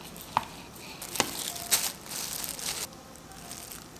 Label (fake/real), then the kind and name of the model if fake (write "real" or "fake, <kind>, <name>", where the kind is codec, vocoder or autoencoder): real